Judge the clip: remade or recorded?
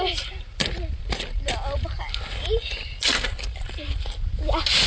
recorded